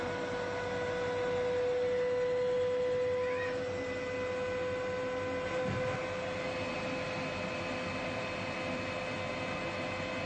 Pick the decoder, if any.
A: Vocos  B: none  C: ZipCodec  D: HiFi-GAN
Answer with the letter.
B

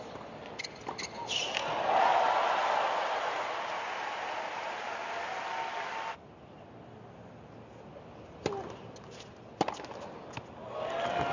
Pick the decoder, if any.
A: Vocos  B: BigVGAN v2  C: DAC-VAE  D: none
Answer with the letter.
D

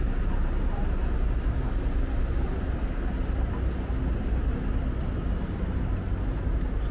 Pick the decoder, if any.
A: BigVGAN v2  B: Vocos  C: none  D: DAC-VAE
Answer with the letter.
C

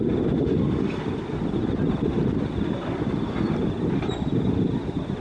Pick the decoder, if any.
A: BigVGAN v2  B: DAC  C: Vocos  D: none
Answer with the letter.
D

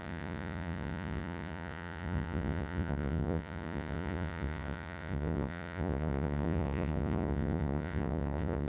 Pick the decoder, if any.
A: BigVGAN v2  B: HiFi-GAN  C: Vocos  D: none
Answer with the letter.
C